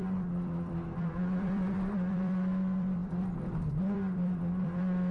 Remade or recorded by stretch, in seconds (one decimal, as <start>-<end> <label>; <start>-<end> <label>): 0.0-5.1 remade